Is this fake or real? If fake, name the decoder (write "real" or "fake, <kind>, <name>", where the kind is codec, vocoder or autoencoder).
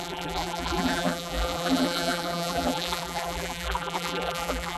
fake, vocoder, BigVGAN v2